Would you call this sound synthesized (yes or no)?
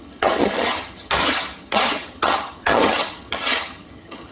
yes